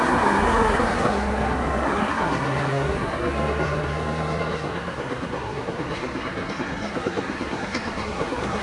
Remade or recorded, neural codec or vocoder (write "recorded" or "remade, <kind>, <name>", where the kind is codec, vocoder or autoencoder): remade, codec, SNAC